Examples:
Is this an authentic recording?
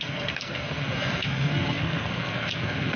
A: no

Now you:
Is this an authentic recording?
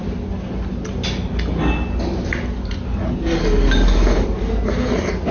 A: yes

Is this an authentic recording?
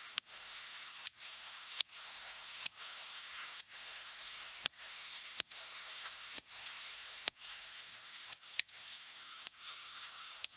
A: no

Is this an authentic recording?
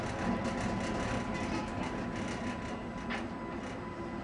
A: yes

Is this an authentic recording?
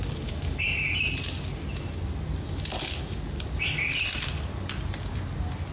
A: yes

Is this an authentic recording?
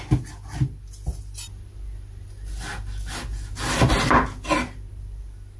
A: yes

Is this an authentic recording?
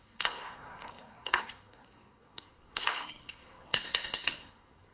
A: no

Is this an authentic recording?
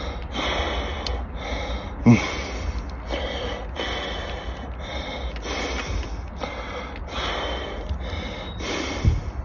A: yes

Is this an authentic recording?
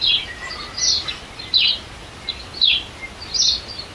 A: yes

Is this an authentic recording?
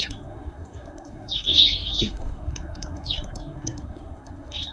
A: no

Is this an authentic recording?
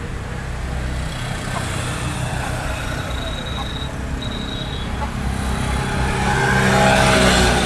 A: yes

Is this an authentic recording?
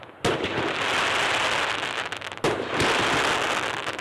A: yes